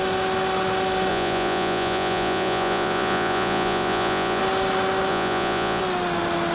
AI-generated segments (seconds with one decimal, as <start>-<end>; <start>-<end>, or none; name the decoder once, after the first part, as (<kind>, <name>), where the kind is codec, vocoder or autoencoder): 1.1-4.4 (vocoder, Vocos); 5.1-5.8